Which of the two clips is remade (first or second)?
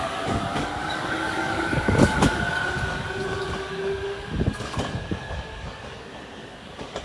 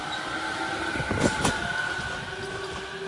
first